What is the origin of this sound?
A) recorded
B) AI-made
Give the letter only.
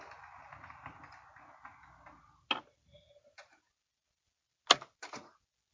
A